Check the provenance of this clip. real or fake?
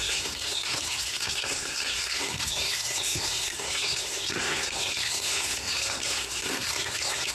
fake